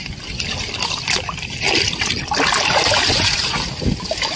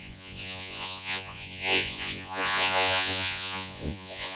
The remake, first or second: second